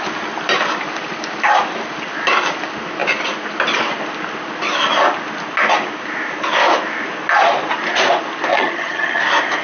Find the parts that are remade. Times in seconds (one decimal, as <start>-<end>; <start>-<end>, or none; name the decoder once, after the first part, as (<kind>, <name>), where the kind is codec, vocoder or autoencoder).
8.5-9.2 (vocoder, HiFi-GAN)